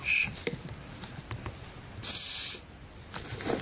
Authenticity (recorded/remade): recorded